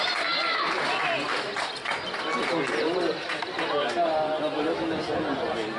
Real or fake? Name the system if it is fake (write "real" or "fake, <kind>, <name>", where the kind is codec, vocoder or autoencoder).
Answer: real